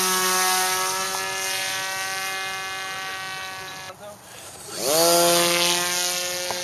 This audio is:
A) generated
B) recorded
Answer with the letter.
B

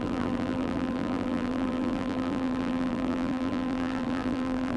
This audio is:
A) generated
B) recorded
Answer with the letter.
A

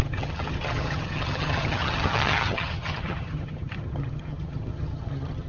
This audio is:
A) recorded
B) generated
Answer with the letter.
B